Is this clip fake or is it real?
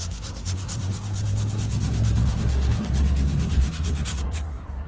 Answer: fake